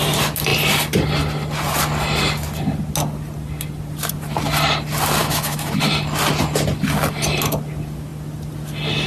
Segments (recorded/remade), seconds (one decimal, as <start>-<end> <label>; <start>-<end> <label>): 0.0-5.2 recorded; 5.2-5.7 remade; 5.7-9.1 recorded